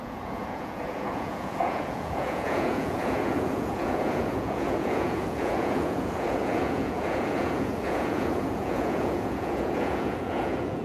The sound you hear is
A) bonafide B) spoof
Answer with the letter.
B